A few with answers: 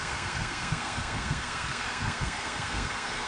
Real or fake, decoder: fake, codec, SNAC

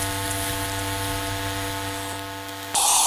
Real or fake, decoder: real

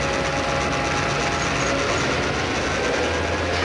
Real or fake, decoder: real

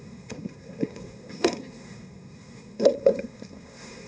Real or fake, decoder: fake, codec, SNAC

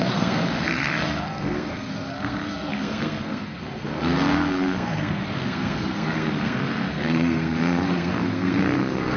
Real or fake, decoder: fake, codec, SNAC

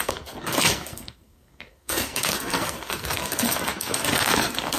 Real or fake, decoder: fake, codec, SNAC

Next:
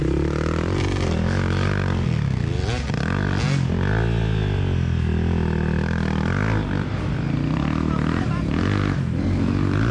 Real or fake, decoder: real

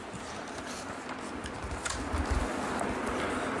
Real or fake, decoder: real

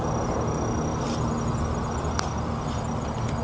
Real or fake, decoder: real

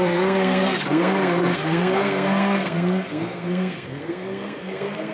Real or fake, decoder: fake, codec, SNAC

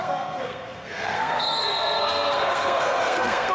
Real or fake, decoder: fake, codec, SNAC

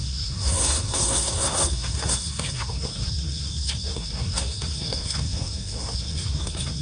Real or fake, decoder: fake, codec, SNAC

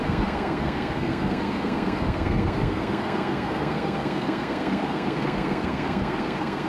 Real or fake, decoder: fake, codec, SNAC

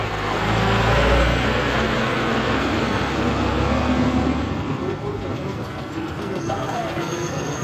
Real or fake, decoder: fake, codec, SNAC